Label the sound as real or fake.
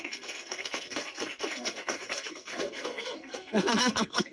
fake